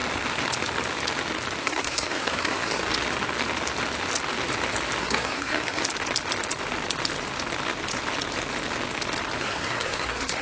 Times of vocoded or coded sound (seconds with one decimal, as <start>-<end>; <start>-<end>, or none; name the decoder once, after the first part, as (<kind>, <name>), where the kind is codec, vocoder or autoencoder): 1.6-2.8 (codec, SNAC); 5.0-5.8; 9.4-10.4